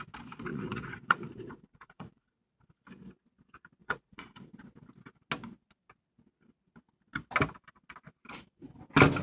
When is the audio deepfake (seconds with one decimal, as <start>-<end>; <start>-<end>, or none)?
0.5-2.3; 3.8-4.4